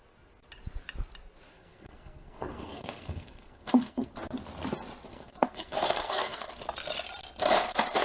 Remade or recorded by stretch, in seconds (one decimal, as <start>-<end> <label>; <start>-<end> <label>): 0.0-1.5 recorded; 1.5-4.1 remade; 4.1-5.1 recorded; 5.1-6.5 remade; 6.5-8.0 recorded